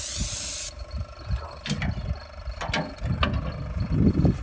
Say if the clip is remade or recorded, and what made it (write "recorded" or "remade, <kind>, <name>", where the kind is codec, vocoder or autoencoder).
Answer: recorded